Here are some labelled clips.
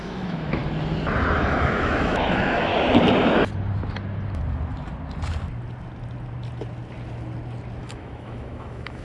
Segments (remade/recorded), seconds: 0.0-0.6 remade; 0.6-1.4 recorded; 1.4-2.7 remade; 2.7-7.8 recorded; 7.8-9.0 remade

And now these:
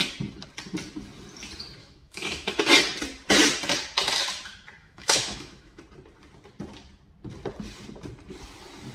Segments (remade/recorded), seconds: 0.0-1.8 recorded; 1.8-2.6 remade; 2.6-4.8 recorded; 4.8-5.8 remade; 5.8-8.9 recorded

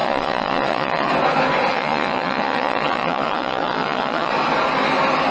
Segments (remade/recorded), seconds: 0.0-1.1 remade; 1.1-1.7 recorded; 1.7-4.3 remade; 4.3-5.3 recorded